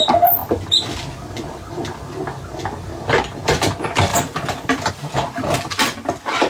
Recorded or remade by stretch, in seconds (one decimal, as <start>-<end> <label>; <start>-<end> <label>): 0.0-4.1 recorded; 4.1-4.9 remade; 4.9-6.5 recorded